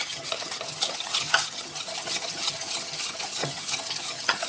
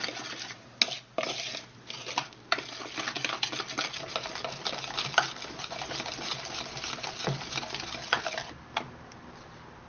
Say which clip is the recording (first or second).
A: second